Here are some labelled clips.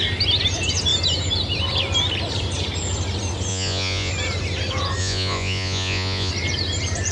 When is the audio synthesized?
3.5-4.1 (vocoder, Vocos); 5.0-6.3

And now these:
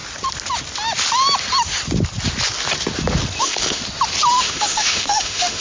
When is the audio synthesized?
3.4-3.8 (autoencoder, DAC-VAE); 4.3-5.6